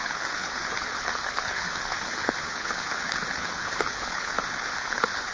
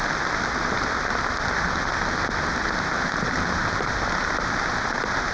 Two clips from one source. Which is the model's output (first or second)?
first